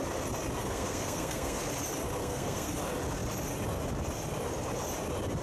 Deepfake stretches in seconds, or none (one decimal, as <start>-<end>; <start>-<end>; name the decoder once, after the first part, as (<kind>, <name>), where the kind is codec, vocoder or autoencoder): 0.6-1.6 (codec, SNAC); 2.2-2.7